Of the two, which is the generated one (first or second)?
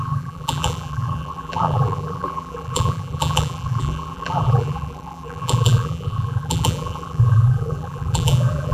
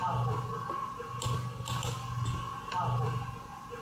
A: first